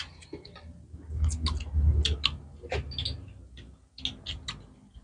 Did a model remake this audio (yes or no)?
no